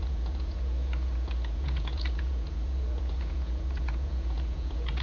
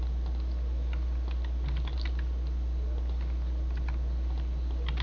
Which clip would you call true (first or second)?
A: second